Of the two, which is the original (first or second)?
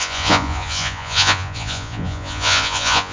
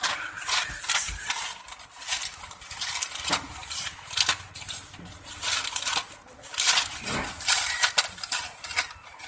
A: second